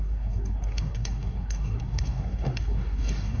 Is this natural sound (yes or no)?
no